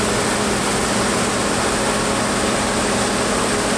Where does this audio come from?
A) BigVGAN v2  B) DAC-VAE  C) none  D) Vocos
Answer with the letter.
C